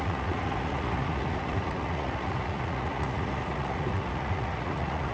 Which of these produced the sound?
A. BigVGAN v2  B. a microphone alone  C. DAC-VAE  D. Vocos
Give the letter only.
D